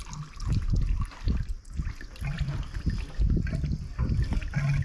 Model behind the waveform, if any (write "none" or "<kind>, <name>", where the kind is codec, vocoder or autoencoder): none